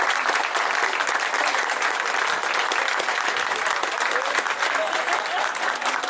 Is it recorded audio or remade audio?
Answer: recorded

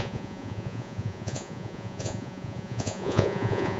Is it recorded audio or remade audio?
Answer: remade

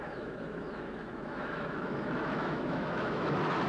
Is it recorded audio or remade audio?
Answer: remade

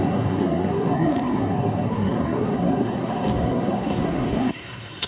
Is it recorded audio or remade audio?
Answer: remade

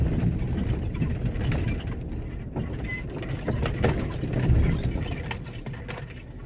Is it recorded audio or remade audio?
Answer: recorded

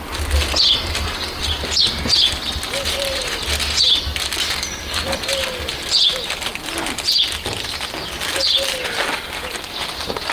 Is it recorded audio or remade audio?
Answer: recorded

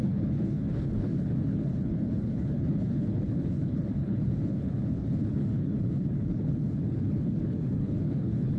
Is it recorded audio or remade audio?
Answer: remade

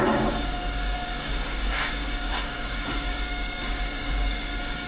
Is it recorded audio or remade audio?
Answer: remade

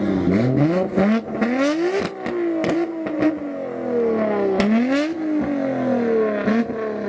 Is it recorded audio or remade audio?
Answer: recorded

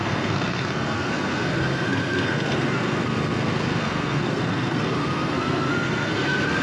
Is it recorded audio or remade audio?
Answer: remade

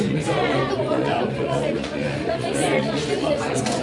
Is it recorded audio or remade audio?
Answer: remade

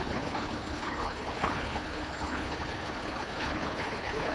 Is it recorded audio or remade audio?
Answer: remade